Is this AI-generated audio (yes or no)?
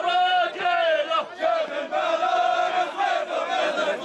no